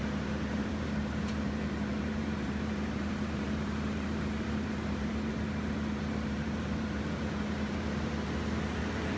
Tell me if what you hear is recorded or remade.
remade